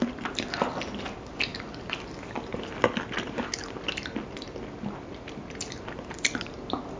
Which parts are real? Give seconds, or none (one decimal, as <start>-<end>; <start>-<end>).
0.0-7.0